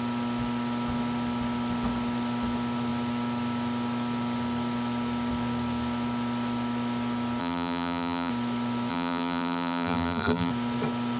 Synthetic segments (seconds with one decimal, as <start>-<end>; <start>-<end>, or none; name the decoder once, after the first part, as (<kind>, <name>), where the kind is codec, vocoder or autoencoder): 7.4-8.3 (vocoder, BigVGAN v2); 8.9-10.5